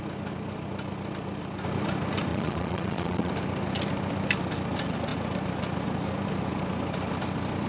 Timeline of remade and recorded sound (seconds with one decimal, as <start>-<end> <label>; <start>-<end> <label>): 0.0-2.3 recorded; 2.3-3.3 remade; 3.3-7.7 recorded